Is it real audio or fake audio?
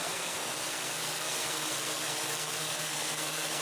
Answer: fake